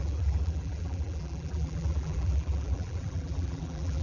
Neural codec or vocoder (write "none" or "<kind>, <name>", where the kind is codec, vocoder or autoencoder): vocoder, BigVGAN v2